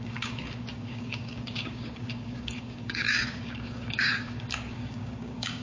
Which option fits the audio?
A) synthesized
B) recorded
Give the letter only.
A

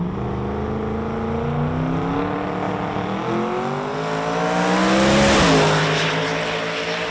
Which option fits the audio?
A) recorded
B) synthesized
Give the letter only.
A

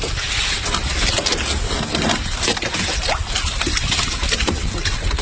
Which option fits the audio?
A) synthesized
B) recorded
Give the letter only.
B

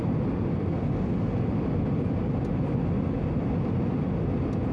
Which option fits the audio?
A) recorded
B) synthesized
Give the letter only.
A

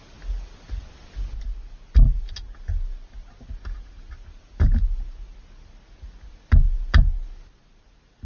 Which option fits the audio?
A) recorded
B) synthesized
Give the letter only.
A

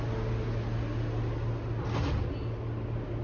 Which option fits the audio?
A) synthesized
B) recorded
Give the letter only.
B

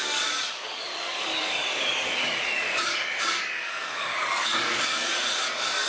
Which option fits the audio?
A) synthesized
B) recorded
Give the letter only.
A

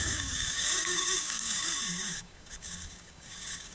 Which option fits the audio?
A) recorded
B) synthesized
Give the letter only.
B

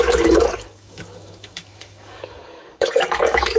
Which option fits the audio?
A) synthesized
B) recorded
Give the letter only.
A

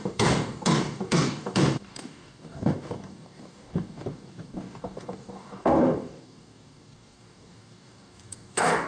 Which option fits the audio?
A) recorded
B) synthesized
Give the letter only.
B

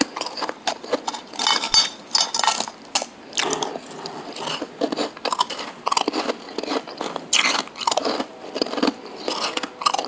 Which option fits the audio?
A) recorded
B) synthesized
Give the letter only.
A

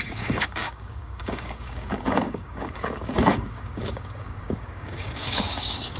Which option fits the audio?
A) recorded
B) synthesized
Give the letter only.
B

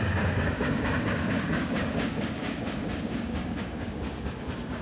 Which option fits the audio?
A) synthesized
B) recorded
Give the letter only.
A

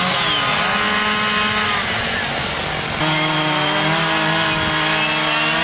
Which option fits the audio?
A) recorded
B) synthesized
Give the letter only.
A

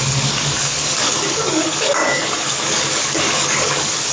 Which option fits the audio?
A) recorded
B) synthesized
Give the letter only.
B